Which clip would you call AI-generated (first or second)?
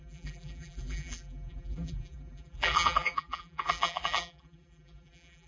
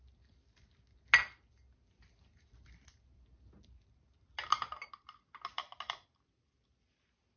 first